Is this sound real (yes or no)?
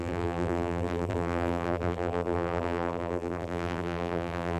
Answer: no